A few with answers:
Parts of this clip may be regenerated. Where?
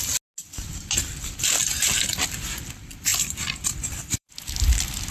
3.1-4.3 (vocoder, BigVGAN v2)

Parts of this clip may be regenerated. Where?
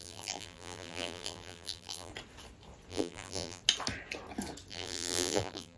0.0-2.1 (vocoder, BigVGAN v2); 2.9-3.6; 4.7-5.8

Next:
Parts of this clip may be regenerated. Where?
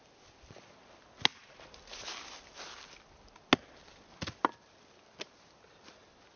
none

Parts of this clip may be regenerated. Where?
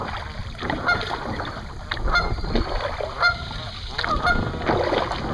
0.4-3.6 (vocoder, BigVGAN v2)